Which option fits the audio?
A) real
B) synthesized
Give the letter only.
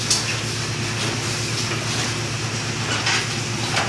A